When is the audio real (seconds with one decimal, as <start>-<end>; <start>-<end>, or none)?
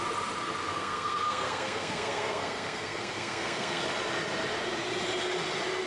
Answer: 0.0-0.7; 3.8-5.9